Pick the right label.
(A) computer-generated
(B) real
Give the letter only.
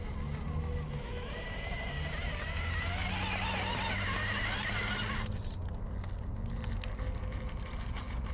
B